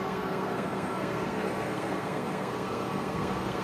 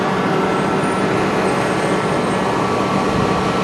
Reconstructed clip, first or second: first